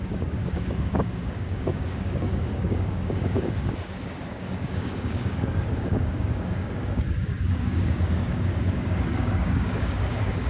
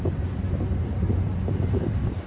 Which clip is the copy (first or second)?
first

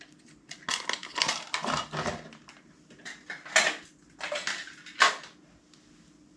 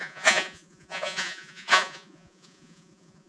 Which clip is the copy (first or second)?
second